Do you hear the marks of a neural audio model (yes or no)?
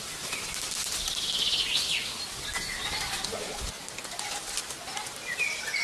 no